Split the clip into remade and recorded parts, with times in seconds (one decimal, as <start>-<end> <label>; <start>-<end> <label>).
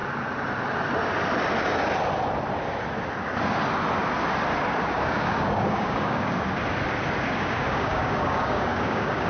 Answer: 0.0-4.8 recorded; 4.8-6.6 remade; 6.6-7.1 recorded; 7.1-9.3 remade